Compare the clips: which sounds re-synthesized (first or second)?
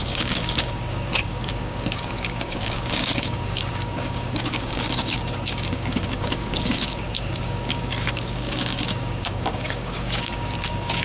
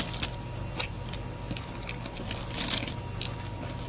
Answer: first